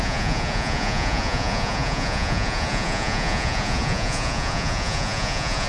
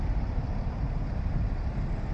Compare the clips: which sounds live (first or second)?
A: second